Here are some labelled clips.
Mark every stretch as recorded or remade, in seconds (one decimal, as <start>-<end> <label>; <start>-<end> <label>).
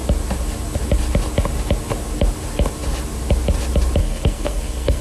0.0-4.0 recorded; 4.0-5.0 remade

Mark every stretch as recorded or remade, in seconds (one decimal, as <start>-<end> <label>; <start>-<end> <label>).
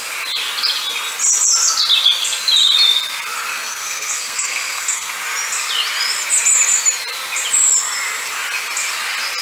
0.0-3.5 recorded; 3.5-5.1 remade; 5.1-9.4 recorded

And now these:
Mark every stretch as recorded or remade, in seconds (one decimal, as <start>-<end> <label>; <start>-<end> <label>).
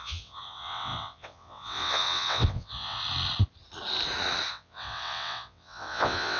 0.0-3.0 remade; 3.0-4.5 recorded; 4.5-6.4 remade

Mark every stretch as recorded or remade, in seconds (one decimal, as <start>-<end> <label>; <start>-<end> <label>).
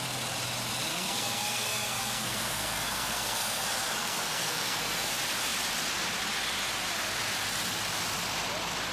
0.0-0.9 recorded; 0.9-5.1 remade; 5.1-8.9 recorded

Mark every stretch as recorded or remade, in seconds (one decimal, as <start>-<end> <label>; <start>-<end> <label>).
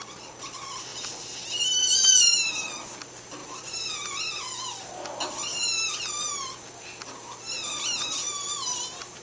0.0-9.2 recorded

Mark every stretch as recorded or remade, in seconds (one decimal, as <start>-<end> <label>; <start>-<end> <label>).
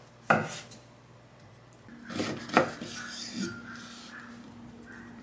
0.0-5.2 recorded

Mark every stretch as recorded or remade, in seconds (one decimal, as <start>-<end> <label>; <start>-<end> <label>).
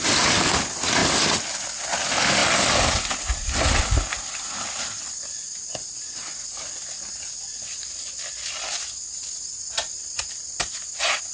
0.0-1.0 recorded; 1.0-1.6 remade; 1.6-2.4 recorded; 2.4-4.2 remade; 4.2-11.3 recorded